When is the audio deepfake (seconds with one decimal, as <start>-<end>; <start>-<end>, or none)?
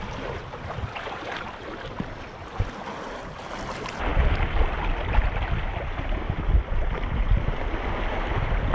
none